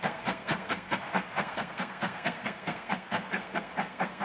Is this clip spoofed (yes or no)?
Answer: yes